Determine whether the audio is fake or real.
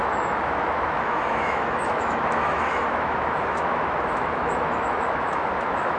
fake